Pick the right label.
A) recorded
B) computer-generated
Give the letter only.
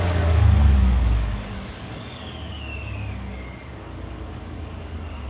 B